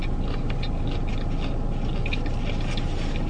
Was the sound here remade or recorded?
recorded